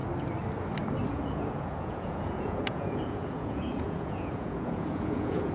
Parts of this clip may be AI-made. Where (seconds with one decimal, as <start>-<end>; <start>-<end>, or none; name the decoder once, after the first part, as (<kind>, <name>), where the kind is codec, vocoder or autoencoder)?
1.1-5.5 (vocoder, Vocos)